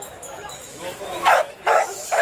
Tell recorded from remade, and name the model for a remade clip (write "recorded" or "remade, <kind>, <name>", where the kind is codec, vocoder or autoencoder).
remade, autoencoder, DAC-VAE